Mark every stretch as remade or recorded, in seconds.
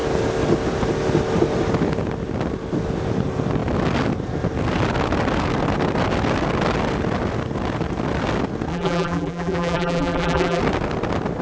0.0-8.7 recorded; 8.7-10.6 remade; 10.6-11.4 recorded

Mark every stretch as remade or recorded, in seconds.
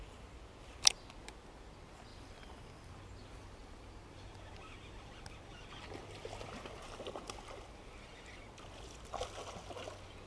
0.0-2.1 recorded; 2.1-2.9 remade; 2.9-10.3 recorded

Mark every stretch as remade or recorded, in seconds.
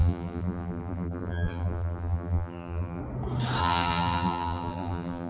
0.0-3.0 remade; 3.0-3.6 recorded; 3.6-5.3 remade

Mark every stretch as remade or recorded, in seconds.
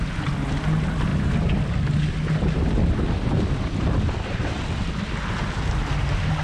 0.0-6.4 recorded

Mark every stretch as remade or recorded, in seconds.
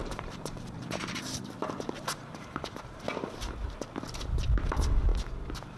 0.0-3.5 remade; 3.5-5.8 recorded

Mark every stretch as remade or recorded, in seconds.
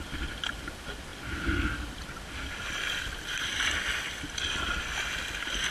0.0-5.7 recorded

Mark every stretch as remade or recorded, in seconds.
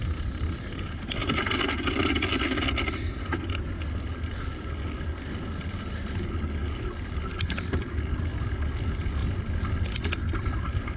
0.0-1.2 recorded; 1.2-3.6 remade; 3.6-6.6 recorded; 6.6-7.9 remade; 7.9-11.0 recorded